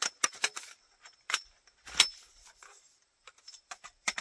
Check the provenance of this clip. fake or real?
real